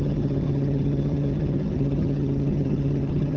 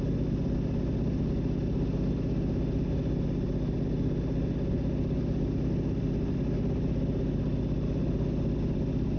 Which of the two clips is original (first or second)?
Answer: second